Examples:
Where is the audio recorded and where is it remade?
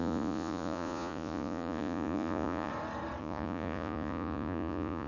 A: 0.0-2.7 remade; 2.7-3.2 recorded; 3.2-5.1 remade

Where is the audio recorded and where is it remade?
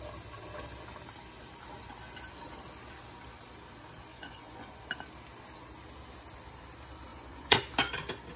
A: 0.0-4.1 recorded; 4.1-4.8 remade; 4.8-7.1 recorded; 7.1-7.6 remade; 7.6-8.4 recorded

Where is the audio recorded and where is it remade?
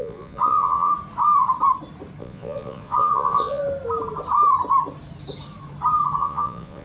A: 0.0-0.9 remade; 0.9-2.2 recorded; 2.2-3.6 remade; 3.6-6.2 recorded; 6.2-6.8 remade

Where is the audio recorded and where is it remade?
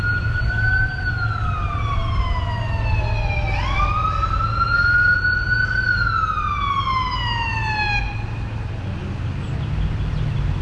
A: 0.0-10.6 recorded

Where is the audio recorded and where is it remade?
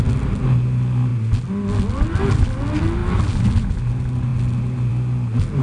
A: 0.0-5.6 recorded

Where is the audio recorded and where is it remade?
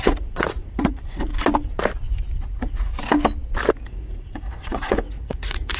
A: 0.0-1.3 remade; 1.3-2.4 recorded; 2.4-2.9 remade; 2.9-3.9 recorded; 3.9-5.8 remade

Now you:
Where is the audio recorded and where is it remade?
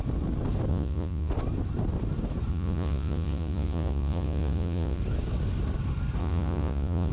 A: 0.0-0.7 recorded; 0.7-1.3 remade; 1.3-2.5 recorded; 2.5-5.0 remade; 5.0-6.2 recorded; 6.2-7.1 remade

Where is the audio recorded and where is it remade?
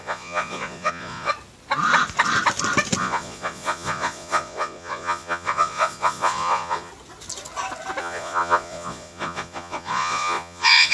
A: 0.0-1.3 remade; 1.3-3.0 recorded; 3.0-6.9 remade; 6.9-8.0 recorded; 8.0-10.9 remade